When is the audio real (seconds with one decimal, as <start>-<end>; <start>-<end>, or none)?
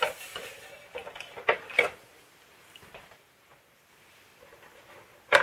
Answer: 1.0-2.5; 3.5-5.4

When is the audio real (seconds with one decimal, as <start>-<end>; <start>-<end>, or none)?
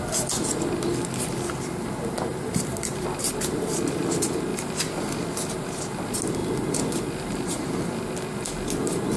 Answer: 0.0-2.3; 2.8-4.5; 5.1-6.4; 7.6-9.2